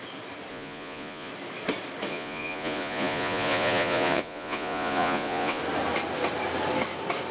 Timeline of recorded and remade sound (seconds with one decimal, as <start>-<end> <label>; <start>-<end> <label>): 0.0-0.5 recorded; 0.5-1.3 remade; 1.3-2.1 recorded; 2.1-5.6 remade; 5.6-7.3 recorded